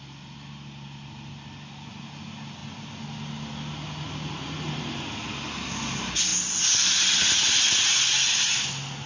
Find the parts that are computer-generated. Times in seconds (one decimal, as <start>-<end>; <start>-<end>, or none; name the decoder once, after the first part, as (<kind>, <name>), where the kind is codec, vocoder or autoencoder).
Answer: none

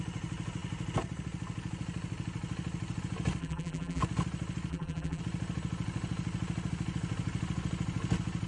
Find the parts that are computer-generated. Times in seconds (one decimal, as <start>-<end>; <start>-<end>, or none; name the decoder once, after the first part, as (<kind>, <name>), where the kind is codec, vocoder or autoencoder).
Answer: 3.4-4.0 (vocoder, BigVGAN v2); 4.7-5.2

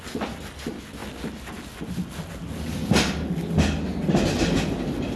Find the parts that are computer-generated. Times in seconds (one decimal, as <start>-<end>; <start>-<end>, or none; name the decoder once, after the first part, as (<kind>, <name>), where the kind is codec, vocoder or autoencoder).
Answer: none